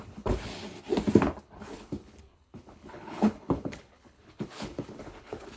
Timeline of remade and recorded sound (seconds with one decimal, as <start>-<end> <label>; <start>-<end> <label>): 0.0-0.5 remade; 0.5-1.4 recorded; 1.4-5.6 remade